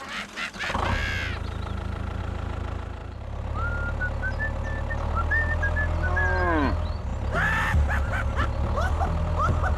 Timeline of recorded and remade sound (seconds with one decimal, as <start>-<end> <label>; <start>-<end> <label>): 0.0-3.0 recorded; 3.0-3.7 remade; 3.7-9.8 recorded